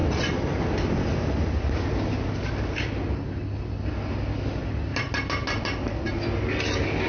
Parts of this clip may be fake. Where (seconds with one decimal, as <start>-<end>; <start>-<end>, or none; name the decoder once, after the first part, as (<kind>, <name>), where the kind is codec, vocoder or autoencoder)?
none